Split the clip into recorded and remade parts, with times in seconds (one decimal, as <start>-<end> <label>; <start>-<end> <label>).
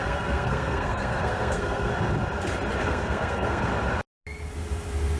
0.0-1.9 remade; 1.9-2.8 recorded; 2.8-3.7 remade; 3.7-5.2 recorded